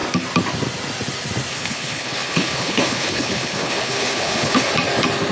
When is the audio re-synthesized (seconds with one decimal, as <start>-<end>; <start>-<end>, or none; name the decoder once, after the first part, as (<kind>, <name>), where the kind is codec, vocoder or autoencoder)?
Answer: 1.5-4.7 (codec, HILCodec)